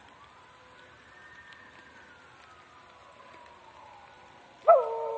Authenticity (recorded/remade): recorded